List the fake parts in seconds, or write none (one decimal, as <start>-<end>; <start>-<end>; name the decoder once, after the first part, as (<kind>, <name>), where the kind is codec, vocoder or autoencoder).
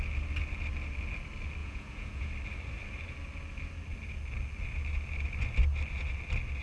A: 1.6-2.3 (vocoder, Vocos)